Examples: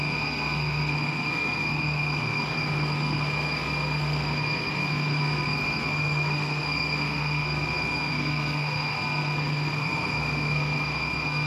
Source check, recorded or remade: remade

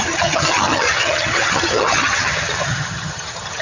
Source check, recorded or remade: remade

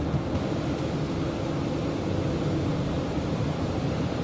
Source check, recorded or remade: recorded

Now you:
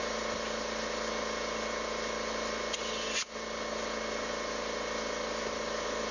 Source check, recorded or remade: recorded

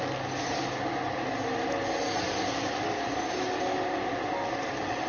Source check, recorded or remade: recorded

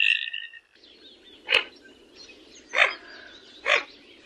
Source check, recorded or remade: recorded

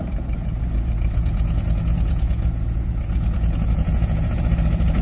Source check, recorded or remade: remade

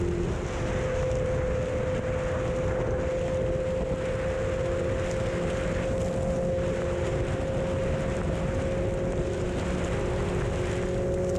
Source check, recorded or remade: recorded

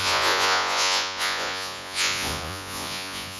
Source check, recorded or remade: remade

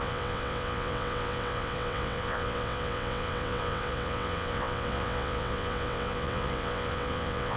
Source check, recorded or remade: remade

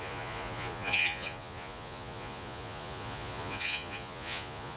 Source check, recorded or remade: remade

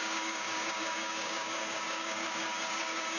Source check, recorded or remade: remade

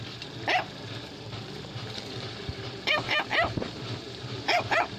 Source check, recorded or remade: remade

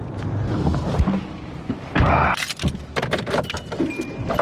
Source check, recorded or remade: recorded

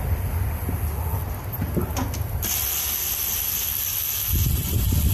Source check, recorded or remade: recorded